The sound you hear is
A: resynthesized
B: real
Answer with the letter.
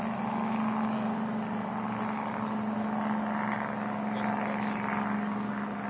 B